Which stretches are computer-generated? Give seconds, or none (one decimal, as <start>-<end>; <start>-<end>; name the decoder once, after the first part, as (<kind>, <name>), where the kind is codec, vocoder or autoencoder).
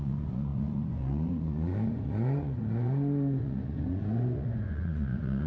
0.0-5.5 (vocoder, Vocos)